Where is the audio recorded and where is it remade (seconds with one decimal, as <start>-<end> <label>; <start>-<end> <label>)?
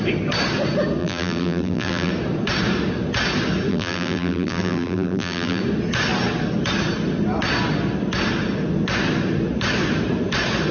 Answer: 0.0-1.0 recorded; 1.0-2.1 remade; 2.1-3.7 recorded; 3.7-5.6 remade; 5.6-10.7 recorded